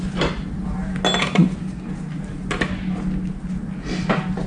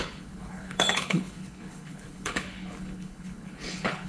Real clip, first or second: first